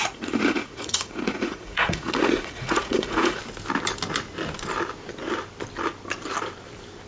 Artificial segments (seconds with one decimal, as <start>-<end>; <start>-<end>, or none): 0.0-3.4